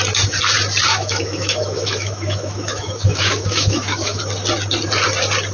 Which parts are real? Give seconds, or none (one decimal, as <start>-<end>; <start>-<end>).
0.0-0.9; 4.2-5.5